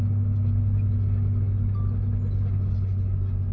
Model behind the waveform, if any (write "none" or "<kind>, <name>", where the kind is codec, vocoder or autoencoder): none